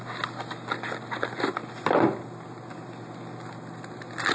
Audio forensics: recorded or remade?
recorded